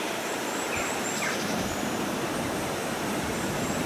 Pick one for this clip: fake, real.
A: fake